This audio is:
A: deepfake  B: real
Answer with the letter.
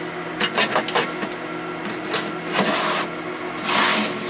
B